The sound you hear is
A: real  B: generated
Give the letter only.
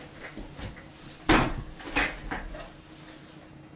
A